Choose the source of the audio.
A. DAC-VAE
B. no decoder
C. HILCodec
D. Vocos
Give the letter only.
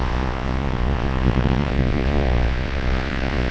D